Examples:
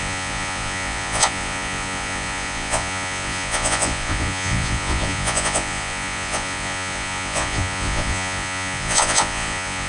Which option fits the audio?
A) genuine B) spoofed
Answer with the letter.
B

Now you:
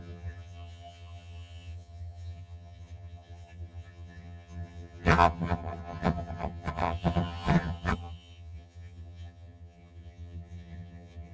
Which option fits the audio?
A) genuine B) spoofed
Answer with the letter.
B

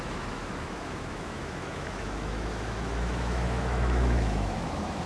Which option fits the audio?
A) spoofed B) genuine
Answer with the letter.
A